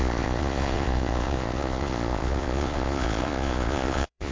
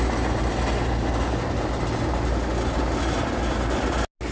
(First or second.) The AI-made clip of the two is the first